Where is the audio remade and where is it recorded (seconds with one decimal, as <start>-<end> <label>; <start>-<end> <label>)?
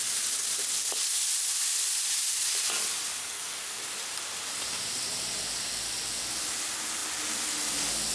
0.0-3.2 recorded; 3.2-3.8 remade; 3.8-8.1 recorded